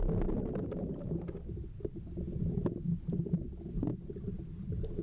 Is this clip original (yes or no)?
yes